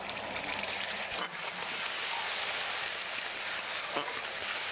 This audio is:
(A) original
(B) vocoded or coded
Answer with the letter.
A